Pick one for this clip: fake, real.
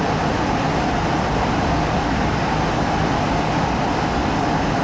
real